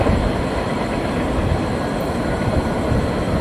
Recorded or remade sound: remade